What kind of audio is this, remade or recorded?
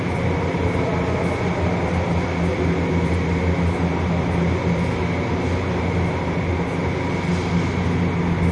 recorded